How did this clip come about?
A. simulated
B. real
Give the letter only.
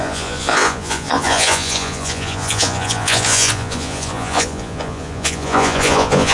A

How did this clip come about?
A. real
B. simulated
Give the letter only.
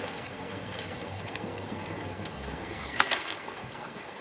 B